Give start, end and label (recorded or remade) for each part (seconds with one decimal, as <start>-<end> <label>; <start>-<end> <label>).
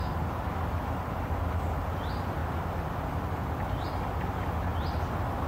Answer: 0.0-1.0 remade; 1.0-2.4 recorded; 2.4-4.1 remade; 4.1-4.7 recorded; 4.7-5.5 remade